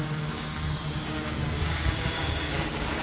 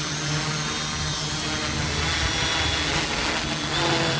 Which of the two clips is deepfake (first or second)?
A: first